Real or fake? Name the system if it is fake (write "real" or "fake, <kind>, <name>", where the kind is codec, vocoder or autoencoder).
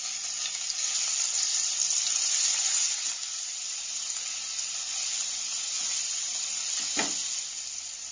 real